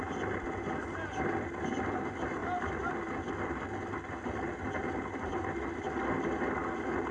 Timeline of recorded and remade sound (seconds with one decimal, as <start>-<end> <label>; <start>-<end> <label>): 0.0-7.1 recorded